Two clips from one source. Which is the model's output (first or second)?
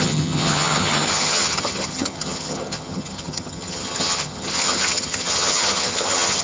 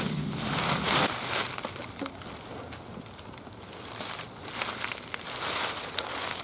first